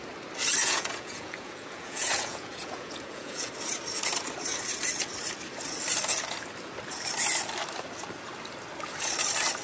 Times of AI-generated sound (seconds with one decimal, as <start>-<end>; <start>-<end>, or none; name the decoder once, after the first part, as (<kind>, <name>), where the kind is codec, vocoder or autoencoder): 0.6-3.5 (vocoder, Vocos)